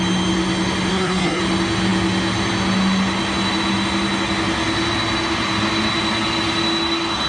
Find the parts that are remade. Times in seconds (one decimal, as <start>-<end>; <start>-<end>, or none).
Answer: 0.9-1.4